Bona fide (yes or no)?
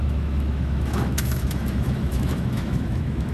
no